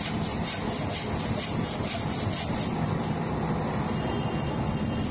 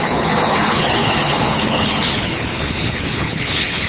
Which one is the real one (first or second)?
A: first